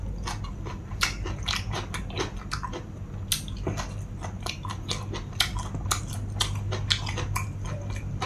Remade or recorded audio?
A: recorded